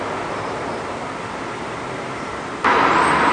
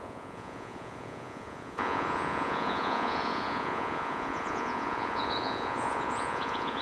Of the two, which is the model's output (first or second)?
second